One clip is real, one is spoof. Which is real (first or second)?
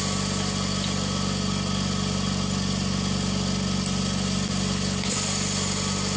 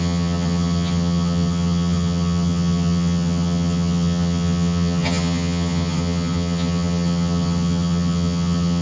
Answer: first